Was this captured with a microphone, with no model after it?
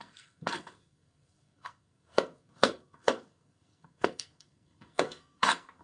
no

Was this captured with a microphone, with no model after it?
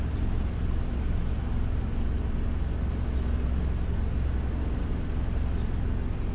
yes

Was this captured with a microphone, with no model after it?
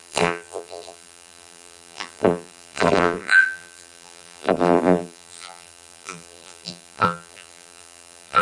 no